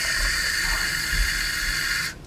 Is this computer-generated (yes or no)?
no